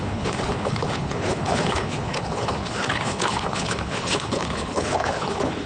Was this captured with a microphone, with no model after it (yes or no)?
no